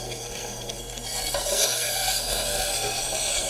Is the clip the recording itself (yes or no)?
no